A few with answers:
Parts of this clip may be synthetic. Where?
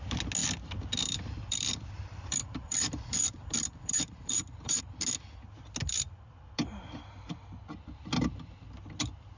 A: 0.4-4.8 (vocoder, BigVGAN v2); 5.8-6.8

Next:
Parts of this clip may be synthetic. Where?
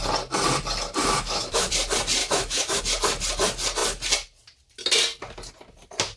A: 1.0-1.7 (autoencoder, DAC-VAE); 2.2-2.8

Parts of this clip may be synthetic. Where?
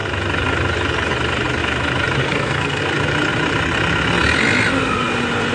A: 2.2-2.8 (codec, SNAC)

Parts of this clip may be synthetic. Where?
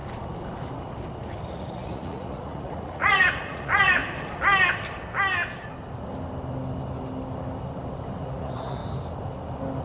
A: 1.5-4.0 (vocoder, Vocos); 8.2-8.8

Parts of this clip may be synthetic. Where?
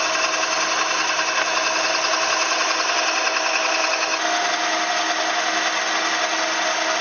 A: none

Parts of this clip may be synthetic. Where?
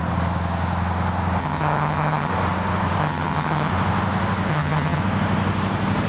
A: 1.4-2.3 (vocoder, HiFi-GAN); 3.0-3.7; 4.5-5.0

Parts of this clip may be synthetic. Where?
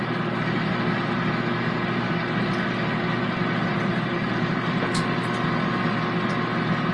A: 3.7-4.9 (vocoder, BigVGAN v2)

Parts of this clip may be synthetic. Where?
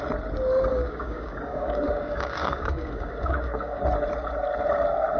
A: 0.7-3.8 (codec, DAC)